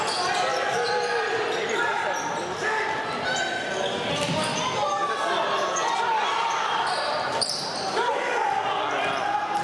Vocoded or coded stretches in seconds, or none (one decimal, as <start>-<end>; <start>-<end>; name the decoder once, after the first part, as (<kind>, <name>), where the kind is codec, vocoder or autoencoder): 0.5-2.0 (vocoder, BigVGAN v2); 5.8-8.3